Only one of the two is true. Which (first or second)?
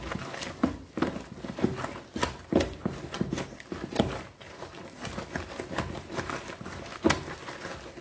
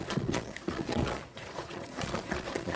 first